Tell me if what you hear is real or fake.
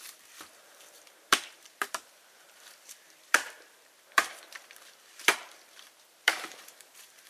fake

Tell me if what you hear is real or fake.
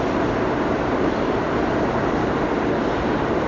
fake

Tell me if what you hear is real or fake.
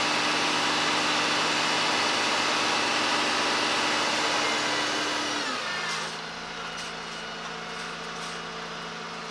real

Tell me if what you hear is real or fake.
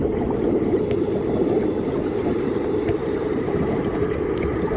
fake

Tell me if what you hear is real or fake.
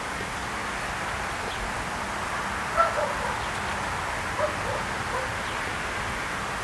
real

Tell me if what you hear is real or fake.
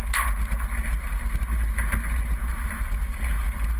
real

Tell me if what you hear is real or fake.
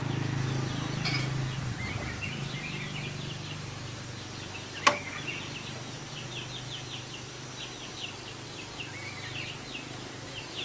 real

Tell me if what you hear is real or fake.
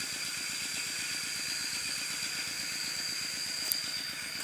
real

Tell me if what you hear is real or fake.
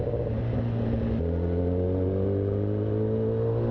real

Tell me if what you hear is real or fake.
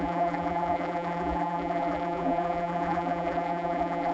fake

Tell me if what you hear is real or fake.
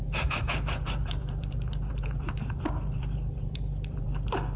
fake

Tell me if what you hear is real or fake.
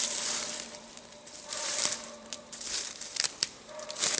fake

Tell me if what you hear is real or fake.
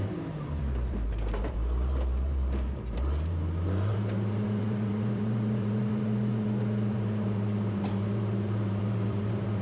fake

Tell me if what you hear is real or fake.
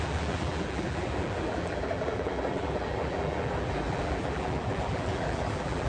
fake